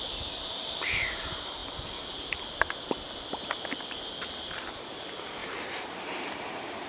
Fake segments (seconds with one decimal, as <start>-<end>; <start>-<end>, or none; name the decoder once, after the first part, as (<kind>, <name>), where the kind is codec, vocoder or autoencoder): 5.4-6.2 (vocoder, BigVGAN v2)